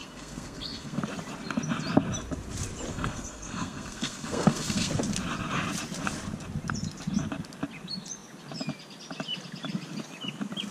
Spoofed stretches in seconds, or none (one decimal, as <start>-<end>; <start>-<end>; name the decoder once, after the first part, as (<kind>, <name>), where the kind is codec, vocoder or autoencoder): 0.0-1.0 (codec, SNAC); 2.9-4.9